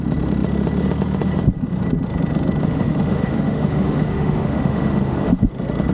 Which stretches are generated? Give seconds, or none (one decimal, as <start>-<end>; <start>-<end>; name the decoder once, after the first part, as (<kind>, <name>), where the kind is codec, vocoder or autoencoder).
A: 2.6-5.5 (autoencoder, DAC-VAE)